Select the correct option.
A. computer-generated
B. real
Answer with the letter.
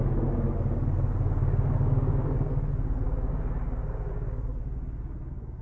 B